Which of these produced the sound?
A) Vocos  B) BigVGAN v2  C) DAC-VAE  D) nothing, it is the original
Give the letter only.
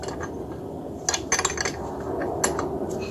D